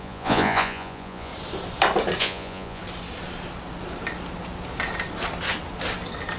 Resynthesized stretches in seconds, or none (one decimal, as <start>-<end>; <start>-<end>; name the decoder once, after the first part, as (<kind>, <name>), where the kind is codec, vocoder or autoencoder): 0.0-1.3 (vocoder, Vocos); 2.2-2.8